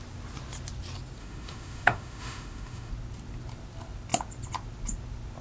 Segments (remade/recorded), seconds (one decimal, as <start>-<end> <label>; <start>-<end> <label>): 0.0-1.2 recorded; 1.2-2.9 remade; 2.9-5.4 recorded